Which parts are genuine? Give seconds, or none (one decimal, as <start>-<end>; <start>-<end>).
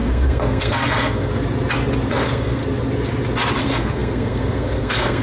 1.3-2.1; 2.6-3.6